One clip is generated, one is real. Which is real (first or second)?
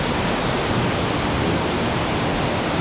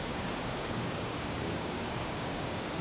first